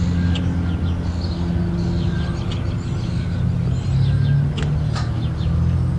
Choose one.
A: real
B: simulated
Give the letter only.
A